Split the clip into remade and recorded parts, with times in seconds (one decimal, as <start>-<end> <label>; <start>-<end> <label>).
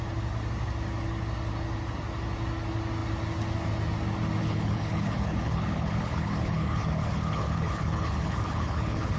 0.0-4.4 recorded; 4.4-9.2 remade